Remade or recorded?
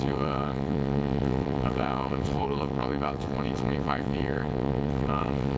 remade